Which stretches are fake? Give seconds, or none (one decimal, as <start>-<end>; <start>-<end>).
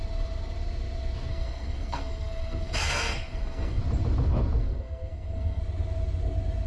1.3-3.8; 4.6-5.6